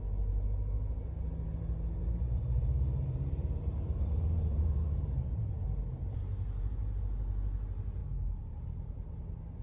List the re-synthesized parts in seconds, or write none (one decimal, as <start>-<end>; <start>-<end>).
2.0-7.0